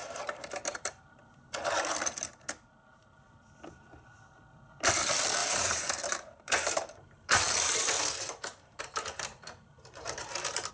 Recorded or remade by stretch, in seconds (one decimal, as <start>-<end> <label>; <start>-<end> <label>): 0.0-1.0 remade; 1.0-5.4 recorded; 5.4-10.7 remade